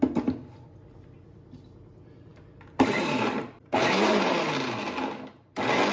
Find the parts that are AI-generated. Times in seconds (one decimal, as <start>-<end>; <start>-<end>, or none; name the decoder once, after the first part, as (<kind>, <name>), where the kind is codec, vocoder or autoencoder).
2.3-4.4 (vocoder, BigVGAN v2)